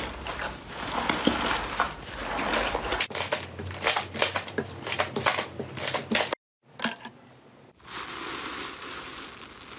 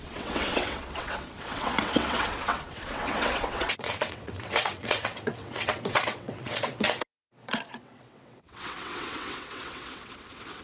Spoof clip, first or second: second